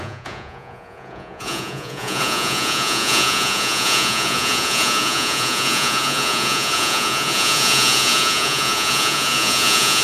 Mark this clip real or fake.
fake